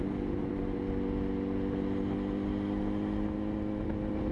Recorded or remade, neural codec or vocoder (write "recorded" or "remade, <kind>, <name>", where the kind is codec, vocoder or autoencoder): recorded